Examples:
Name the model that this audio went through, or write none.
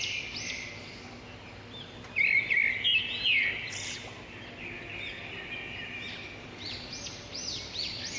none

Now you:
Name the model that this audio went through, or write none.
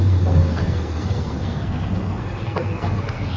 codec, SNAC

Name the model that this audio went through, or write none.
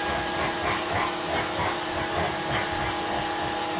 none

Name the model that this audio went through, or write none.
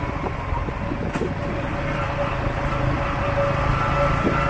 none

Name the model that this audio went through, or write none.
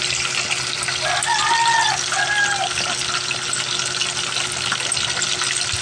none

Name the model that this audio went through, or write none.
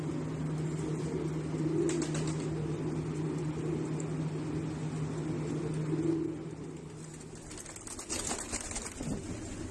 none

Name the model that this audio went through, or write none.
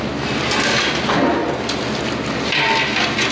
none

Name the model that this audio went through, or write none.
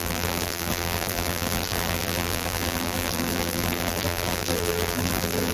vocoder, BigVGAN v2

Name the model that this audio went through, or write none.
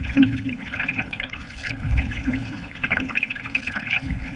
codec, HILCodec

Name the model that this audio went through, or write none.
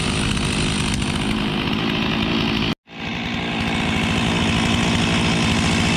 none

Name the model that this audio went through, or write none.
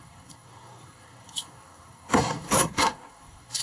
codec, SNAC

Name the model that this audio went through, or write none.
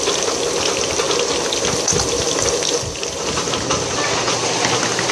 none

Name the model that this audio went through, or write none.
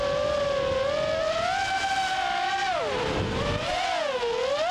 none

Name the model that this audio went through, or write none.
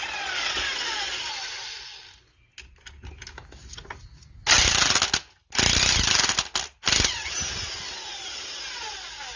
none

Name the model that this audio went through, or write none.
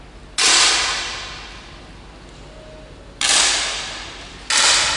none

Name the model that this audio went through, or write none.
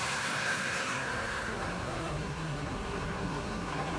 codec, SNAC